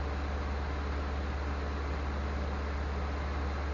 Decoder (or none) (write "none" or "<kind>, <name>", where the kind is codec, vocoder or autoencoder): none